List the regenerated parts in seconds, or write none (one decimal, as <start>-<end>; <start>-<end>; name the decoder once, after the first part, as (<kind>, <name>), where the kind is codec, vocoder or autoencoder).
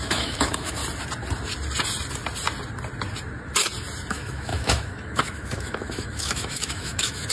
0.0-0.8 (autoencoder, DAC-VAE); 4.1-7.3